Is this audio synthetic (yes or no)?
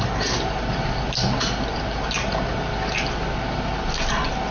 no